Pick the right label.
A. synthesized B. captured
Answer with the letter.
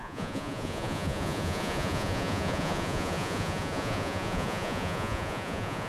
A